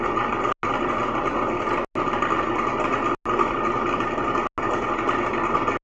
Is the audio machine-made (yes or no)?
no